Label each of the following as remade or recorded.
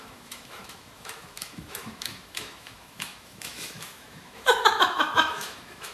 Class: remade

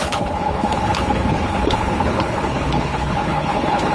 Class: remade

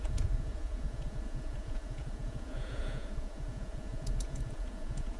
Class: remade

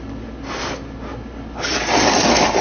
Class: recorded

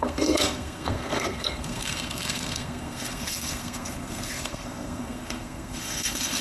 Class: remade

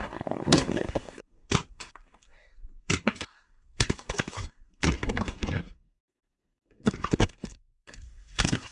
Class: remade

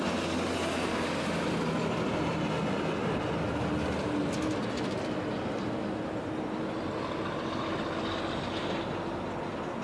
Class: recorded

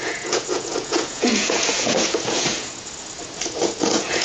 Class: remade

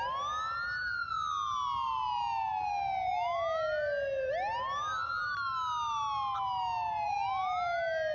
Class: recorded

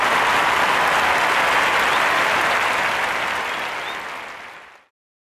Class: recorded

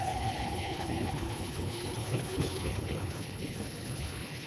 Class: remade